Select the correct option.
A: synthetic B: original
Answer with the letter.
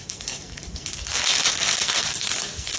A